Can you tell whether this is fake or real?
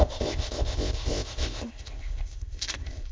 fake